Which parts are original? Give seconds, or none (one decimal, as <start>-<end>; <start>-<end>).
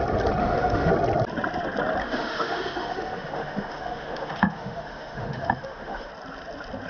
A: 0.0-0.4; 0.9-2.0; 6.1-6.9